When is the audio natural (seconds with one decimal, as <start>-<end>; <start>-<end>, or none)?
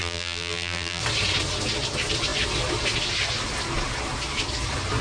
1.0-5.0